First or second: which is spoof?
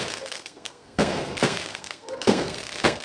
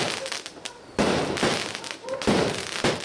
first